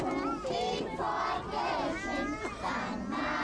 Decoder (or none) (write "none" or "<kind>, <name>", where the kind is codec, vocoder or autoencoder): none